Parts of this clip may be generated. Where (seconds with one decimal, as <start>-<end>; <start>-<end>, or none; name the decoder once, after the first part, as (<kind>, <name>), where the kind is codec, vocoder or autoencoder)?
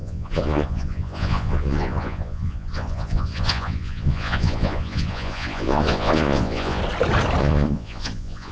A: 0.0-6.8 (vocoder, Vocos); 7.4-8.5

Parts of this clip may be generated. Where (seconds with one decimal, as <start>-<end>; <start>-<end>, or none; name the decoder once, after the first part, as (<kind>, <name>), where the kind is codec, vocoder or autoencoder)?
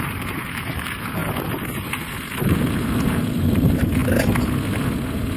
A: 0.0-1.2 (vocoder, BigVGAN v2); 2.4-4.0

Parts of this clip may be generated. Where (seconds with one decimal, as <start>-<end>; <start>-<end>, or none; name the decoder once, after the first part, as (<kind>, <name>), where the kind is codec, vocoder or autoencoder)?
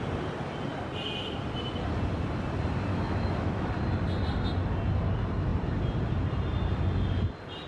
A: 2.9-3.7 (autoencoder, DAC-VAE)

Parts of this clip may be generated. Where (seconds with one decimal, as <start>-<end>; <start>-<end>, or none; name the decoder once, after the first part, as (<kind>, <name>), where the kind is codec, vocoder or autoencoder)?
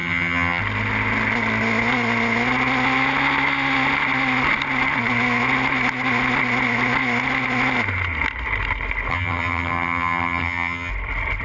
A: 0.0-0.6 (vocoder, HiFi-GAN); 9.1-10.9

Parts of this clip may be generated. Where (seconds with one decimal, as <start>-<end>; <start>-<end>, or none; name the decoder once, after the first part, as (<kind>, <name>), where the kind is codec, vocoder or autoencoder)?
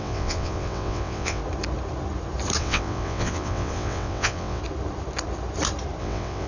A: 0.0-1.4 (vocoder, WaveNeXt); 2.6-4.6; 6.0-6.5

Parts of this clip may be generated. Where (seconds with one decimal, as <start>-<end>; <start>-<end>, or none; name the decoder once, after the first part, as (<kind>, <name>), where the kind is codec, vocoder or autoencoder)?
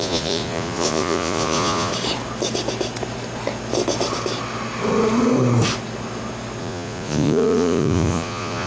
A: 0.0-1.9 (vocoder, Vocos); 6.6-8.7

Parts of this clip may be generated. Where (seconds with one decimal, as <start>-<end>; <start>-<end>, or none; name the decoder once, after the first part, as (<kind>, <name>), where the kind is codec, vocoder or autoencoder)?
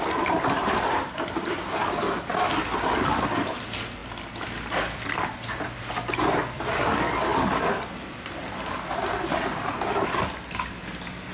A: none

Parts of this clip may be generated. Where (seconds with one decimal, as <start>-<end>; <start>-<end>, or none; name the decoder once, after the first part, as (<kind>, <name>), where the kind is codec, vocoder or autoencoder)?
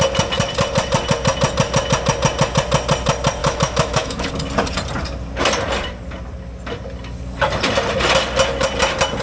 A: 3.4-4.3 (autoencoder, DAC-VAE)